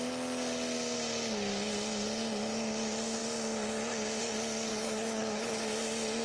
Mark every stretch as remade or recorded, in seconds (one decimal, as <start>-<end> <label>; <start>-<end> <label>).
0.0-4.7 recorded; 4.7-5.6 remade; 5.6-6.2 recorded